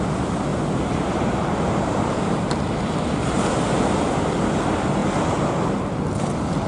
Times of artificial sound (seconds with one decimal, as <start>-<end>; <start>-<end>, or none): 0.5-2.5